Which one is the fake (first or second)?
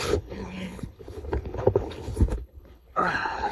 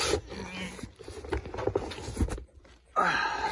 first